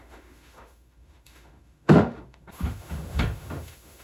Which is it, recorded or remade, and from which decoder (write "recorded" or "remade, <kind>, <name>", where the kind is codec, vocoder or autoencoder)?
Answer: remade, autoencoder, DAC-VAE